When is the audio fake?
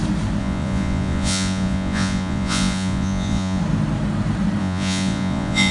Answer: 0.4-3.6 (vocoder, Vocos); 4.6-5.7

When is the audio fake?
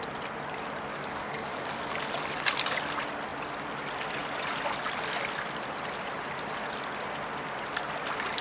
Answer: 0.9-1.9 (codec, DAC)